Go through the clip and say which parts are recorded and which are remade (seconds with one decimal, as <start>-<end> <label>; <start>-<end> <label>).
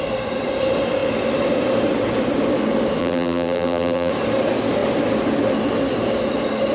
0.0-3.0 recorded; 3.0-4.1 remade; 4.1-6.7 recorded